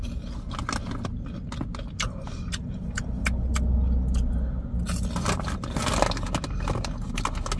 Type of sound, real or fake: real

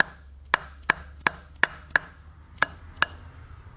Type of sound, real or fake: real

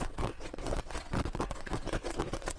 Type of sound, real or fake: fake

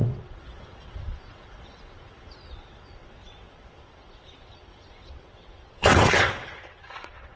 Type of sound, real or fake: fake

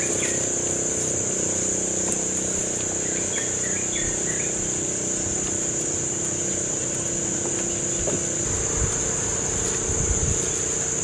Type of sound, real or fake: real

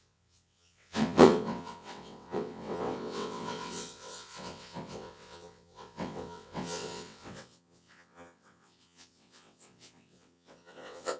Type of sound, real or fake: fake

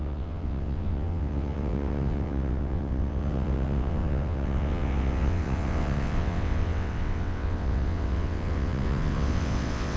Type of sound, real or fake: fake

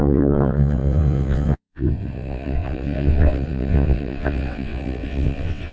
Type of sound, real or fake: fake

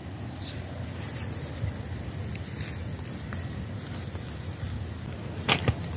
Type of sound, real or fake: real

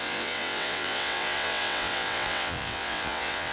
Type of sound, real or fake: fake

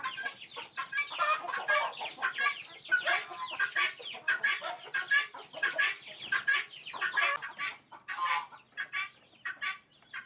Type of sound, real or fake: real